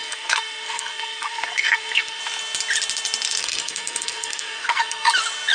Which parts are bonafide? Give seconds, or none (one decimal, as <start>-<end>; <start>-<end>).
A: 2.2-3.4; 5.1-5.5

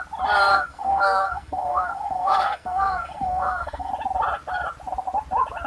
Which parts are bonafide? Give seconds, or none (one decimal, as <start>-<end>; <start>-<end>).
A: 0.0-0.5; 3.9-5.7

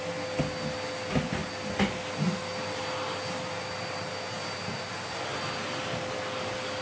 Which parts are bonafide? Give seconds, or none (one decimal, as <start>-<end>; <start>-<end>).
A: 0.0-6.8

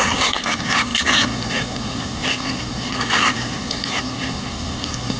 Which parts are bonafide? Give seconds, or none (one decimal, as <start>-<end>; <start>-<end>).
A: none

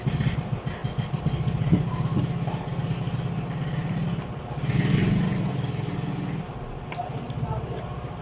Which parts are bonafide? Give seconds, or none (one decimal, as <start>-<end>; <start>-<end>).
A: 0.0-8.2

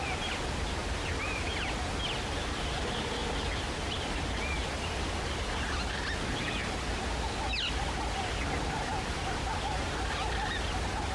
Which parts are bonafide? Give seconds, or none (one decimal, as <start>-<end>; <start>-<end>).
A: 0.0-11.1